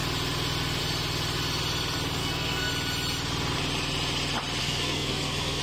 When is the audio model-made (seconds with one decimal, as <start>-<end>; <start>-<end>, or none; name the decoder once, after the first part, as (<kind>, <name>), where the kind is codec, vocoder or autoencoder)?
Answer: 2.2-2.7 (codec, SNAC); 4.6-5.6